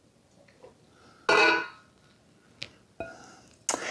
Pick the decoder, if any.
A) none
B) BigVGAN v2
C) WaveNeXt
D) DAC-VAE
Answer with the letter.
A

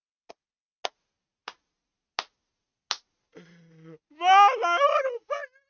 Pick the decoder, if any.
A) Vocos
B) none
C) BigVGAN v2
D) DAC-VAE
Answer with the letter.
B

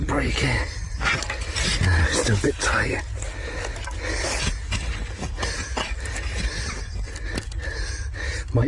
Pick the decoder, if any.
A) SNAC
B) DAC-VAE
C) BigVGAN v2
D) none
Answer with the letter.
D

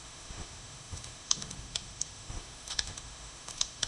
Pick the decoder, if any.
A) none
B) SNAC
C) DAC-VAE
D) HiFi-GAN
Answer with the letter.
C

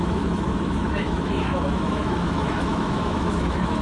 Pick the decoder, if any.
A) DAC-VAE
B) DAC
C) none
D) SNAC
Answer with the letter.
A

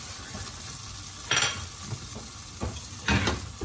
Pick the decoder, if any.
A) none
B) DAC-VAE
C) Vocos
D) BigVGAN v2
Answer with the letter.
A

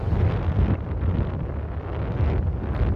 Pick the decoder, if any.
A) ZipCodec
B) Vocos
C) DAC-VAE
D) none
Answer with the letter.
D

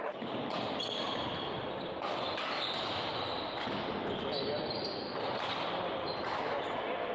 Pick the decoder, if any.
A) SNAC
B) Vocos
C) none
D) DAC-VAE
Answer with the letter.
C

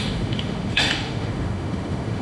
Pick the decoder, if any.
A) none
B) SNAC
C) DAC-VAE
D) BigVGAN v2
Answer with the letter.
C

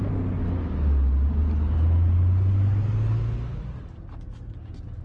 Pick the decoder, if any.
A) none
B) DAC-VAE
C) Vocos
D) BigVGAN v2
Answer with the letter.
A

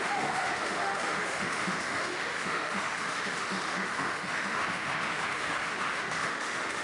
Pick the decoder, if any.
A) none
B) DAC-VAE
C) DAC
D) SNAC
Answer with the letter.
B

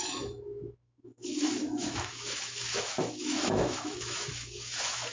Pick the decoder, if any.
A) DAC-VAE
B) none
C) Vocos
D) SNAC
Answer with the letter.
A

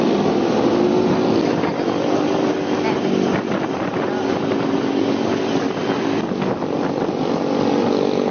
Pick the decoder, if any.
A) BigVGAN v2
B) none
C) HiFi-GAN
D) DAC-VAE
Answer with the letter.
B